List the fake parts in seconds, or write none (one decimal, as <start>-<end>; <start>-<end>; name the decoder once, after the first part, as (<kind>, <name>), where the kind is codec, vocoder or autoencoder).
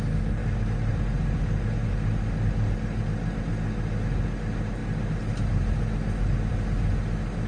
none